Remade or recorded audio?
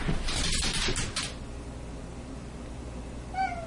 recorded